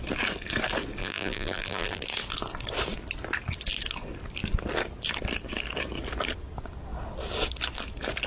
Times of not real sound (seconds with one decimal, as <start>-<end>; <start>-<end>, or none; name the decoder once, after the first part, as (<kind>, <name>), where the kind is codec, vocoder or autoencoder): 1.0-2.0 (vocoder, BigVGAN v2)